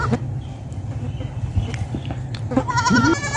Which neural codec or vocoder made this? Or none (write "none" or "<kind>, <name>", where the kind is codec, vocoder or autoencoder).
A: none